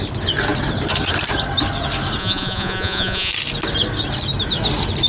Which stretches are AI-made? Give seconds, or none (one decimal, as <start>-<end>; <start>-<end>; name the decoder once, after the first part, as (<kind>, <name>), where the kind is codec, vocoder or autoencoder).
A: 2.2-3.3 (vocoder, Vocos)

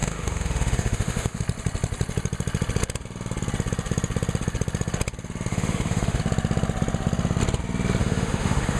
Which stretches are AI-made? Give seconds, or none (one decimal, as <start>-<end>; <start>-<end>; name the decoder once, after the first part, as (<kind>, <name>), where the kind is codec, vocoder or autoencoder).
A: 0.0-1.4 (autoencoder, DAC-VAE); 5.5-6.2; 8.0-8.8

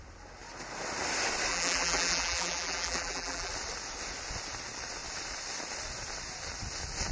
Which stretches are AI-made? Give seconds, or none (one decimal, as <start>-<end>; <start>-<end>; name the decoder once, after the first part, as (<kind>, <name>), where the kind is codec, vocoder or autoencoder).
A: 1.5-3.5 (vocoder, BigVGAN v2)

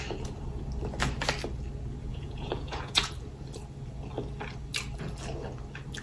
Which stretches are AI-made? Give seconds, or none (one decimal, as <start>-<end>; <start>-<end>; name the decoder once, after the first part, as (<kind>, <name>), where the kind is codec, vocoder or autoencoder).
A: 2.1-3.1 (vocoder, Vocos)

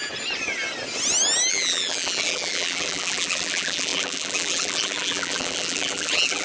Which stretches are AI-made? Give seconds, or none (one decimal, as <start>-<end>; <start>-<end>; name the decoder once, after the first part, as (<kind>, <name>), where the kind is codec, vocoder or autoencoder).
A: 1.5-6.4 (vocoder, BigVGAN v2)

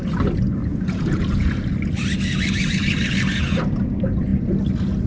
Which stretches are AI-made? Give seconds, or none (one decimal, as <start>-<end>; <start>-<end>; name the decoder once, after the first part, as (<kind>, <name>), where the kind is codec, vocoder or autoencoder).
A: 0.7-1.5 (vocoder, Vocos)

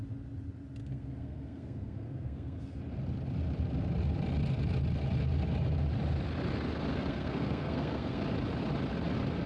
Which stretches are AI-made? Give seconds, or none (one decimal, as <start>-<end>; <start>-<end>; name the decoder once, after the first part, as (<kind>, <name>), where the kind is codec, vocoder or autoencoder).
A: 0.8-2.8 (codec, SNAC); 6.9-8.2

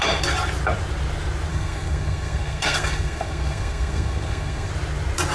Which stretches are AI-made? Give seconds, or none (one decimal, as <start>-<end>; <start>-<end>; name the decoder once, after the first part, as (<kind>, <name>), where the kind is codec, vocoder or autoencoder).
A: 1.5-4.7 (codec, SNAC)